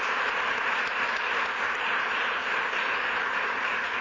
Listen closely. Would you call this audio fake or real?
real